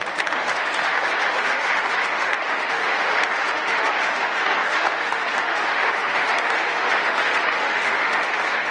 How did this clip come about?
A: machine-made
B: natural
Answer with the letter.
A